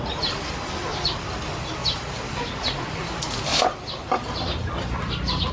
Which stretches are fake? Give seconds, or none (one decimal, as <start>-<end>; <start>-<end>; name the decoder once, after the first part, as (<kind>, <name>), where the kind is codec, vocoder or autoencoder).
0.9-1.4 (vocoder, BigVGAN v2); 1.8-2.6; 3.5-5.0